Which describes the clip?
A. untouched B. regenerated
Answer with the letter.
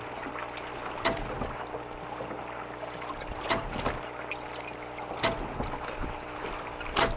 A